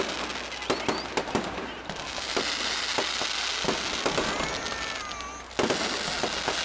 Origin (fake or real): real